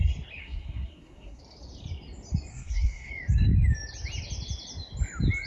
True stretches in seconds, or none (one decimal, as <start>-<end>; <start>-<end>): 0.0-0.4; 1.4-2.5; 3.1-5.5